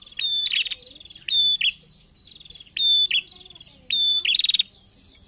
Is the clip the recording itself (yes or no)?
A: yes